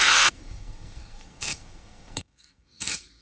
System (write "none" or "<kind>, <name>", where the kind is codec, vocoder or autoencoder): codec, SNAC